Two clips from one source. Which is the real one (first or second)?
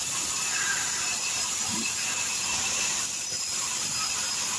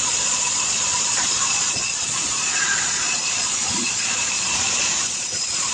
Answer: first